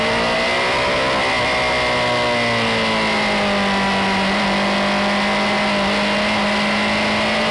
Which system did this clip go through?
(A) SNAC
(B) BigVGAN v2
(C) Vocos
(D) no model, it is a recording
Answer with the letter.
D